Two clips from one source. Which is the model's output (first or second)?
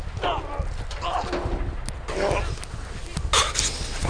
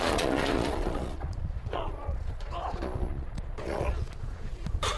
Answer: second